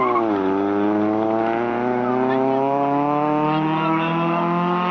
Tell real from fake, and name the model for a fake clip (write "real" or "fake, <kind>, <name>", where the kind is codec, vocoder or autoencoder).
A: real